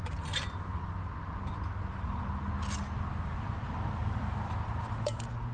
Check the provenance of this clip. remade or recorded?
recorded